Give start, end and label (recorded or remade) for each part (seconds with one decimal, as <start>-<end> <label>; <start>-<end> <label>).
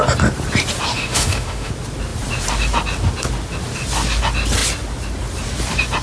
0.0-0.9 recorded; 0.9-1.7 remade; 1.7-6.0 recorded